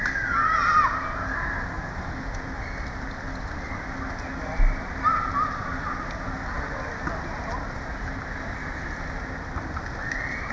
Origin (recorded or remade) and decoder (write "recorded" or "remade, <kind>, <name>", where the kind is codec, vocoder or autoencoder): recorded